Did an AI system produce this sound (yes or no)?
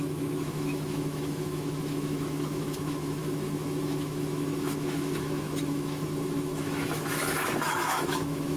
yes